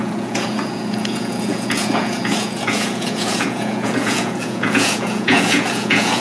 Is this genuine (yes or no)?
no